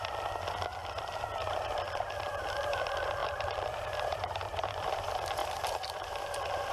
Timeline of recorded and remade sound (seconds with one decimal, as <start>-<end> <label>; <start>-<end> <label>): 0.0-3.2 recorded; 3.2-5.0 remade; 5.0-5.4 recorded; 5.4-6.2 remade; 6.2-6.7 recorded